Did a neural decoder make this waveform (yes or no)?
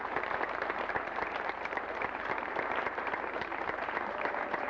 yes